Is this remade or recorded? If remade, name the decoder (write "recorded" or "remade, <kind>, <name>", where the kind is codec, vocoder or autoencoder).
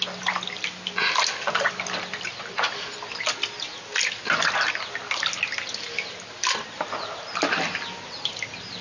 recorded